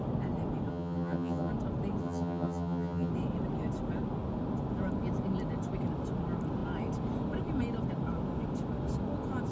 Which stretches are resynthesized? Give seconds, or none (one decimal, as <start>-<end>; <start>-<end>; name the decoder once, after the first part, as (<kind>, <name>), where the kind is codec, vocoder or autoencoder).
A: 0.7-1.5 (vocoder, HiFi-GAN); 2.0-3.1